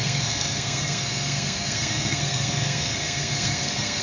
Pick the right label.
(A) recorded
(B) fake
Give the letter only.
B